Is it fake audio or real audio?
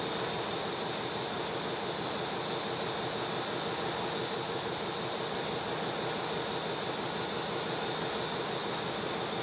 real